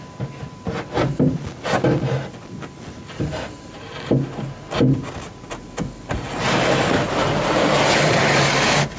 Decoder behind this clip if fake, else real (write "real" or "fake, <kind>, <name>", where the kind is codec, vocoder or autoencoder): real